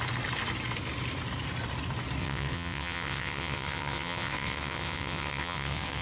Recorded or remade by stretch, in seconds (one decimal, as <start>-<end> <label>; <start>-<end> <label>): 0.0-2.2 recorded; 2.2-6.0 remade